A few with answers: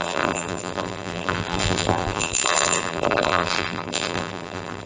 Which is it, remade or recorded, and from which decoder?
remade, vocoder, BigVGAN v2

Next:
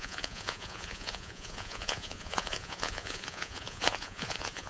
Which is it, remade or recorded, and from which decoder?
remade, vocoder, Vocos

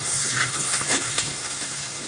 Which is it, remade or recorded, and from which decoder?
remade, codec, SNAC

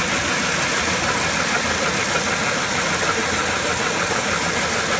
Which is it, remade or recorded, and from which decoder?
recorded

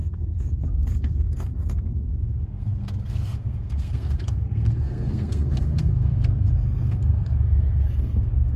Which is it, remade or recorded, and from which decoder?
remade, codec, SNAC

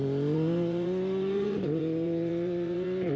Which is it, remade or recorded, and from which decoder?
remade, vocoder, Vocos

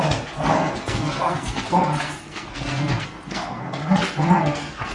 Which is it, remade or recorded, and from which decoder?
remade, codec, SNAC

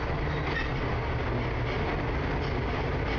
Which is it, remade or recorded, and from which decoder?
recorded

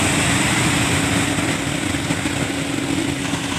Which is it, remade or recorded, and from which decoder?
recorded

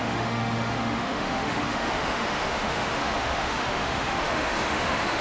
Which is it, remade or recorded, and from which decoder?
remade, autoencoder, DAC-VAE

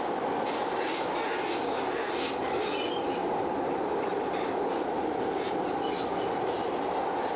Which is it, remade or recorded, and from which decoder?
recorded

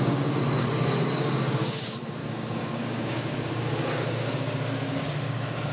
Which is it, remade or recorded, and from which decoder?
remade, codec, DAC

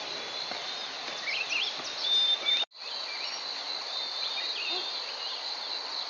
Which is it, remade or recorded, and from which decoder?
recorded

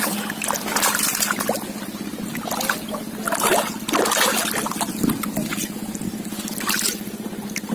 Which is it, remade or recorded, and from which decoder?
recorded